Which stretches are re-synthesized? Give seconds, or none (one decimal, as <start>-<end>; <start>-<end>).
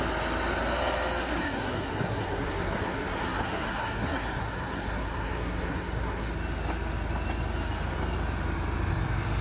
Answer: 1.2-6.3